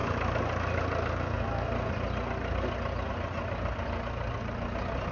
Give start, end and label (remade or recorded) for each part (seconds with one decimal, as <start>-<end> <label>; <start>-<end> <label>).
0.0-5.1 recorded